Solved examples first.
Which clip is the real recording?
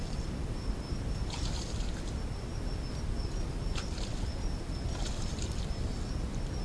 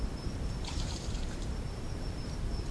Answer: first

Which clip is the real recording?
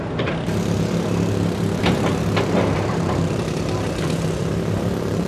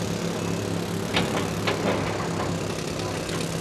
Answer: second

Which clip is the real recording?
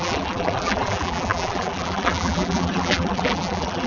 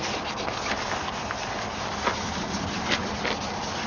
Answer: second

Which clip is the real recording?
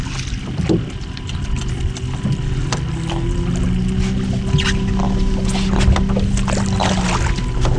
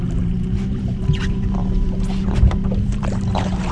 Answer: first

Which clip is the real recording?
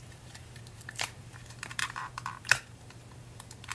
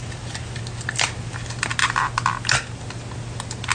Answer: second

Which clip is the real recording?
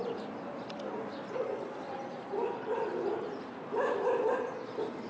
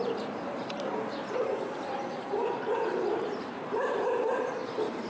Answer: first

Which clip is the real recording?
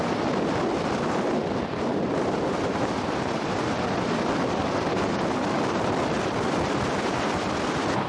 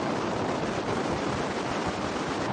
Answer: second